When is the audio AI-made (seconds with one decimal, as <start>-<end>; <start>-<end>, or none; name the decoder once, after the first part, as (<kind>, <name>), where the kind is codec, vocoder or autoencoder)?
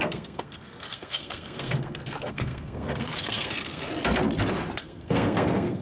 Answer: 0.0-3.9 (codec, SNAC); 4.8-5.8